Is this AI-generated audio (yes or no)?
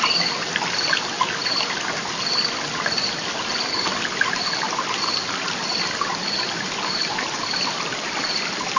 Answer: no